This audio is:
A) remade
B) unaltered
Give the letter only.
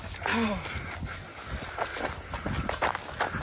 B